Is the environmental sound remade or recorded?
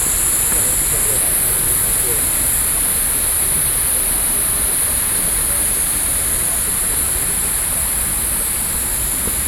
recorded